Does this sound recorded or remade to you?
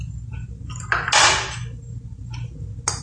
recorded